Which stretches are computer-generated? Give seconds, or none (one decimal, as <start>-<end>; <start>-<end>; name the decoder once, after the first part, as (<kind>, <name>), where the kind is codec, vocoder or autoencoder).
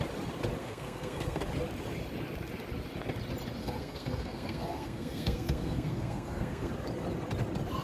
0.6-1.4 (codec, SNAC); 3.6-6.7